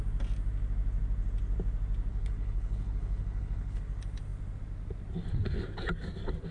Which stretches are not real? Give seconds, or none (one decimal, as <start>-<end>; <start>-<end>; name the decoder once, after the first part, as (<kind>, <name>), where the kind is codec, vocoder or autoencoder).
2.1-3.8 (codec, HILCodec)